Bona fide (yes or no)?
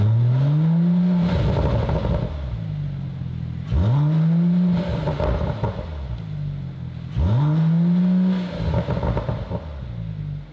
yes